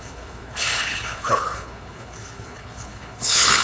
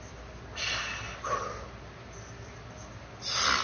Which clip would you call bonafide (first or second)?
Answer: second